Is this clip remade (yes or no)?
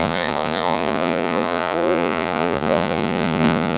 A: yes